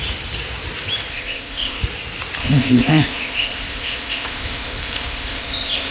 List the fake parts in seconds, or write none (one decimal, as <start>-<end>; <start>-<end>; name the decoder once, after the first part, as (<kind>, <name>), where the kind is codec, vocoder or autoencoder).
1.1-1.8 (codec, ZipCodec); 2.4-5.9